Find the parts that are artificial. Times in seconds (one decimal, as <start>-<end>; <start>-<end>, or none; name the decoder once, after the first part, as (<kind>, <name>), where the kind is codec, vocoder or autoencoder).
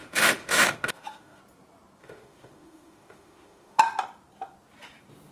0.0-1.4 (autoencoder, DAC-VAE); 2.0-3.8